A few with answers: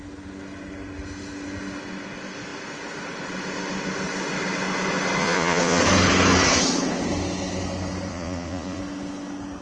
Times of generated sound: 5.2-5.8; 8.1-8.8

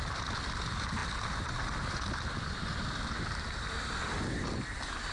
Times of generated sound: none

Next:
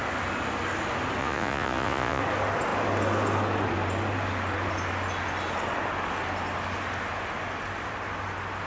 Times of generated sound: 1.2-2.2